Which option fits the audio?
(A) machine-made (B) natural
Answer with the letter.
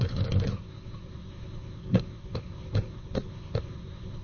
A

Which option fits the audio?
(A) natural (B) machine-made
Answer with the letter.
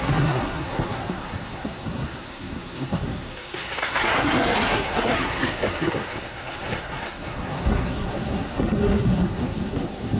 B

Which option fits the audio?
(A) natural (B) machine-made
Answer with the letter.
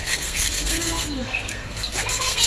B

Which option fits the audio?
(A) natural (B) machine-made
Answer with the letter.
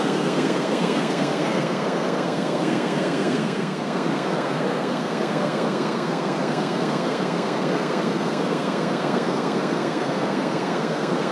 B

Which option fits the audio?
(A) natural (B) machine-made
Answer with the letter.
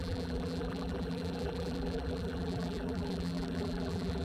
B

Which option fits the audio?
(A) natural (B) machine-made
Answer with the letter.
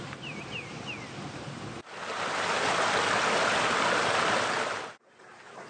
A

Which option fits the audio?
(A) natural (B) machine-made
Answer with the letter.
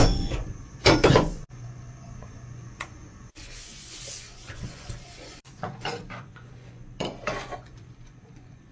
B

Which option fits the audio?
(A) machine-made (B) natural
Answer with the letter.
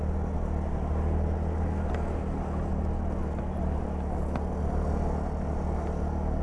B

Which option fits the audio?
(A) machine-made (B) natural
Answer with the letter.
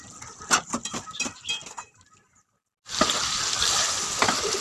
B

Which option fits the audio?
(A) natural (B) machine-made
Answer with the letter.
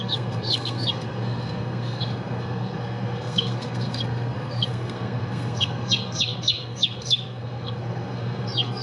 B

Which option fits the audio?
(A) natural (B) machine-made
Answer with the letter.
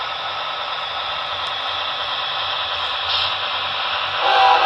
A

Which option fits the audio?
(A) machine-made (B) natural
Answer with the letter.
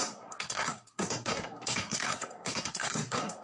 A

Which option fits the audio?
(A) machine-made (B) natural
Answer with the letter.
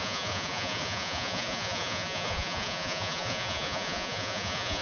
A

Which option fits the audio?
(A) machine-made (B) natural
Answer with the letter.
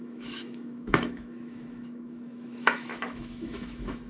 A